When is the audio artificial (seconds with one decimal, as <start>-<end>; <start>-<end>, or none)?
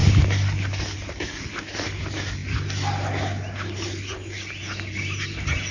none